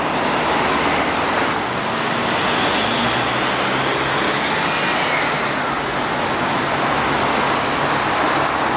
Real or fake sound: real